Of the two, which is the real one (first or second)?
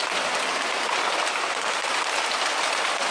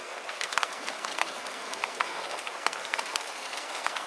first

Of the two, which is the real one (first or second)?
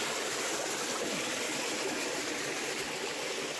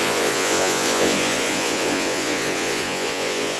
first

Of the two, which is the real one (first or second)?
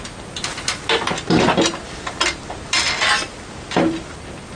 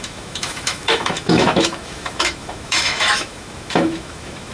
first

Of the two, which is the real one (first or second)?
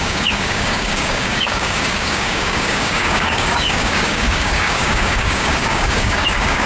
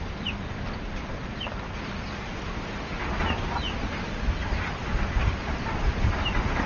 second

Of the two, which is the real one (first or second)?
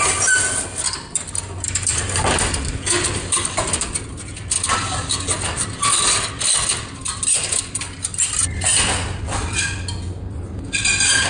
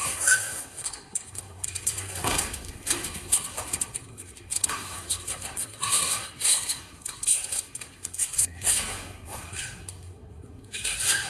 first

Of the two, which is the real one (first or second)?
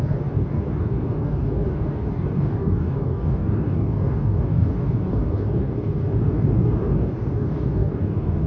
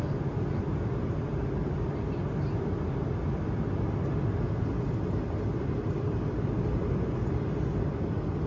second